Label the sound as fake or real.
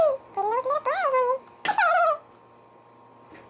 real